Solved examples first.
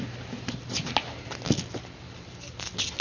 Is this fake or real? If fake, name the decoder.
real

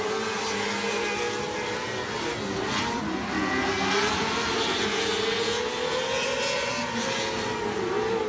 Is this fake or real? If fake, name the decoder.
real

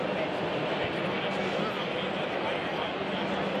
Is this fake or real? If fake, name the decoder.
real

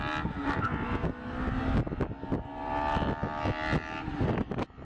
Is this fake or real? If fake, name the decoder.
real